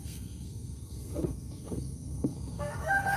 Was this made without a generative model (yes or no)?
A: no